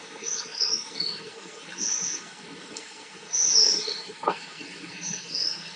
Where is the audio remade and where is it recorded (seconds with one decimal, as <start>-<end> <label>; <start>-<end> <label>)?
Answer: 0.0-5.8 remade